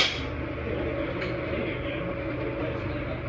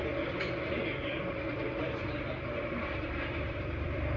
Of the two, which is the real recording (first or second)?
first